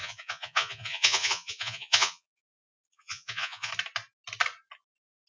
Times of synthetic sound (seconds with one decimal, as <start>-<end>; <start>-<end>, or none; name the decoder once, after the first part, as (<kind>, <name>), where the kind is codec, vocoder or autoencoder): 0.0-3.7 (vocoder, Vocos)